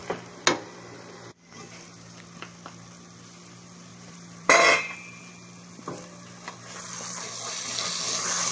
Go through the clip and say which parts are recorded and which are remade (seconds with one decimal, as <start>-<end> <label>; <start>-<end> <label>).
0.0-3.9 recorded; 3.9-5.2 remade; 5.2-8.5 recorded